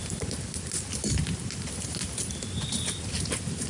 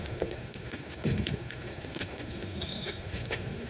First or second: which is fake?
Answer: second